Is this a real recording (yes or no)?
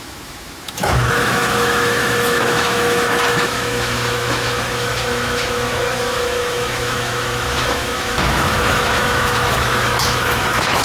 no